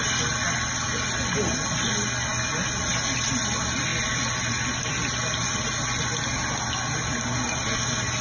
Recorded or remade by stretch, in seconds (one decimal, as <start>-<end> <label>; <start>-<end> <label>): 0.0-8.2 recorded